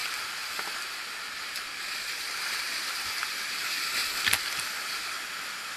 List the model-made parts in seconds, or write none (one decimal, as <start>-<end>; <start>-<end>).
0.0-3.5; 4.0-5.3